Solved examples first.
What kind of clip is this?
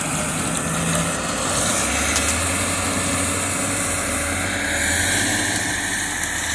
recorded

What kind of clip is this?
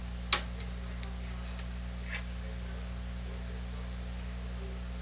recorded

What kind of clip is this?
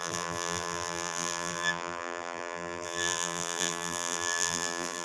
remade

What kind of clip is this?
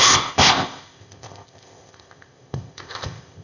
remade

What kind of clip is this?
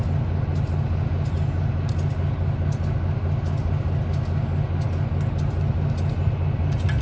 recorded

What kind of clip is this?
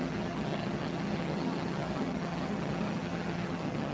remade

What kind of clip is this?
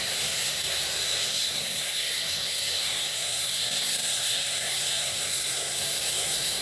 remade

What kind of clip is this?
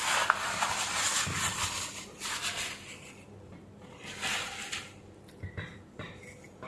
recorded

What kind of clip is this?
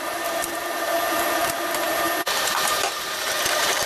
remade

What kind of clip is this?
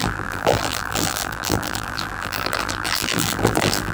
remade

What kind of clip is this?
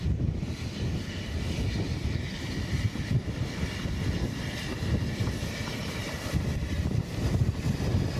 remade